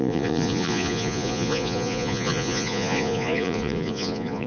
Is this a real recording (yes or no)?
no